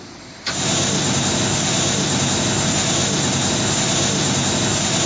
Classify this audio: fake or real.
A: real